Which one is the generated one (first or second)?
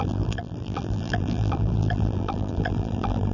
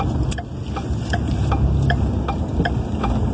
first